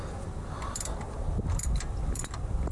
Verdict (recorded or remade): remade